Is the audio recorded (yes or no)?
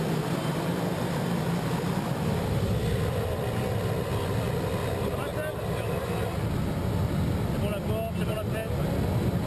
yes